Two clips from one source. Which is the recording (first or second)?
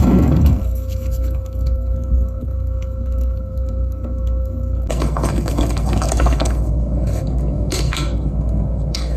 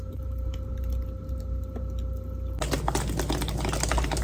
second